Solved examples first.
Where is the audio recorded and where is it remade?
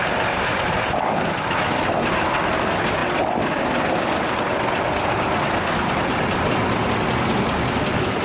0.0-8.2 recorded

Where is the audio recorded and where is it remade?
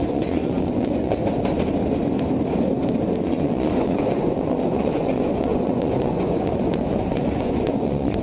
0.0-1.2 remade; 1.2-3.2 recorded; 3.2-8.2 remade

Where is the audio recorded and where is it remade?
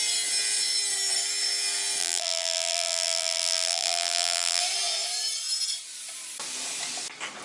0.0-2.0 recorded; 2.0-4.6 remade; 4.6-7.4 recorded